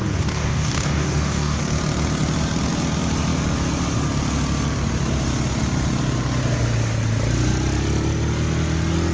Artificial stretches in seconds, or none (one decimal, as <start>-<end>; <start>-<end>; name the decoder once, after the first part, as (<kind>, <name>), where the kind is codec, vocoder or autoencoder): 0.0-1.6 (codec, DAC)